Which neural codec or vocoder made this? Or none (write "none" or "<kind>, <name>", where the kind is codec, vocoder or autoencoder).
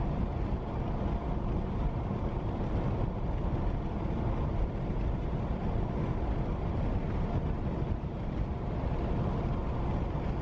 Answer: none